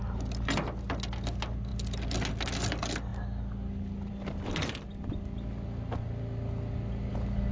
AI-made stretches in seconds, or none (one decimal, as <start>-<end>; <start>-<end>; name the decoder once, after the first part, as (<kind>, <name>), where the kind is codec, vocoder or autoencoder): none